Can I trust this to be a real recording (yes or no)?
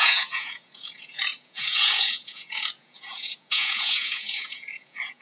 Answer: no